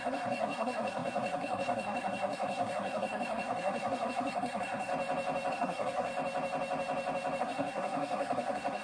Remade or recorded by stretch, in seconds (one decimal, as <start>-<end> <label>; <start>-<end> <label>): 0.0-4.9 remade; 4.9-5.5 recorded; 5.5-6.1 remade; 6.1-7.4 recorded; 7.4-8.8 remade